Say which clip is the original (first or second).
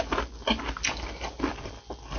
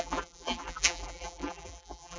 first